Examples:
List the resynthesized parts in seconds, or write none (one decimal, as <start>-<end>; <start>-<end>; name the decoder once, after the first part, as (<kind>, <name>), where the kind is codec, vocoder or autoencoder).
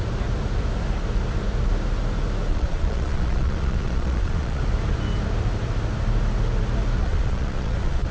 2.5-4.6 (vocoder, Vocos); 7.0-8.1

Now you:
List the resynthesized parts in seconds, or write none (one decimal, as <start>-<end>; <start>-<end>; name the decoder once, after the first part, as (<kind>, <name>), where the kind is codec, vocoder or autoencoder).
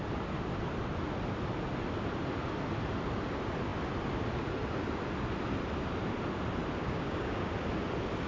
6.8-7.5 (codec, DAC)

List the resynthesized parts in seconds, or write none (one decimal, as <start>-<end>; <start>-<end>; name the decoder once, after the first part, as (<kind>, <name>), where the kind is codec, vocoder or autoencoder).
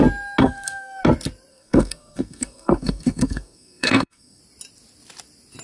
0.4-1.0 (codec, SNAC); 1.5-4.4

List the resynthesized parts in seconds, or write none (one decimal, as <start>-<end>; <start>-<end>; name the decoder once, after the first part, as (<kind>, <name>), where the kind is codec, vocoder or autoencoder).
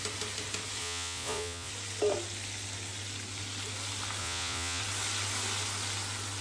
0.8-1.7 (vocoder, Vocos); 4.2-4.8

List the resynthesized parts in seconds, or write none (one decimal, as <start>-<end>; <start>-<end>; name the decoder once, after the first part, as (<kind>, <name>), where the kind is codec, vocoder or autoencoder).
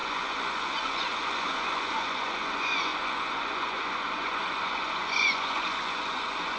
0.0-6.6 (vocoder, Vocos)